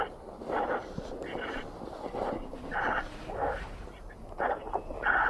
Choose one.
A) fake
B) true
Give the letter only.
B